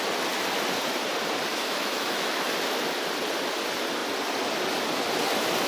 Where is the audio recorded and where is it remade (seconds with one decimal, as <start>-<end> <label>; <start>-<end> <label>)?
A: 0.0-1.5 recorded; 1.5-2.4 remade; 2.4-5.7 recorded